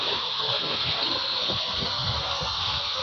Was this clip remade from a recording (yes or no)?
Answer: yes